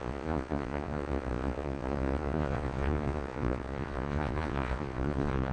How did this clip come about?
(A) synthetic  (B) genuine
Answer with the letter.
A